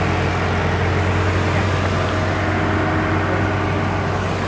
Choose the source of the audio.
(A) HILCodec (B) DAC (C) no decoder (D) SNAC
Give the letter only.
C